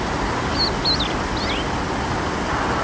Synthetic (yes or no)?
no